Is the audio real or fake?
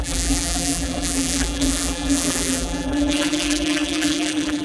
fake